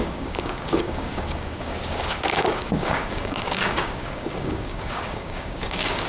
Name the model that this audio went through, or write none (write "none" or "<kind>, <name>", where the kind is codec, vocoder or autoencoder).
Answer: codec, DAC